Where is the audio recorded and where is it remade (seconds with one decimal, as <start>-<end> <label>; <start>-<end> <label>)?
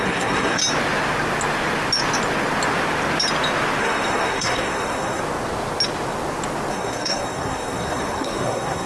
0.0-0.6 remade; 0.6-3.8 recorded; 3.8-5.2 remade; 5.2-6.7 recorded; 6.7-8.9 remade